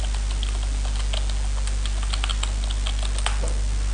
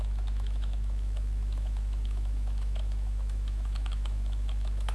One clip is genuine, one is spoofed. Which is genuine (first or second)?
first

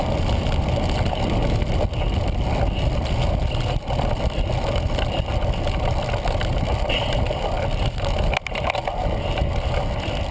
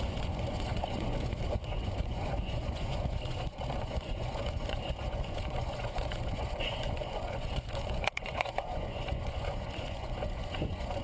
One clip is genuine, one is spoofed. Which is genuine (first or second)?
first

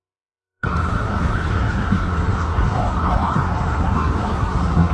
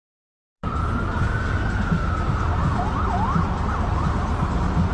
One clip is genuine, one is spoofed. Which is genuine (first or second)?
second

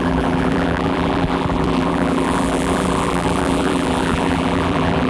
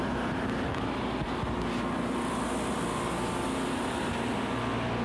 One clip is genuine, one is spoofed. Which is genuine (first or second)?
second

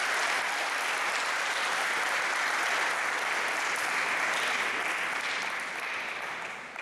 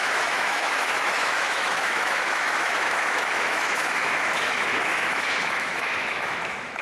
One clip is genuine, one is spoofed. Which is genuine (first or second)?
first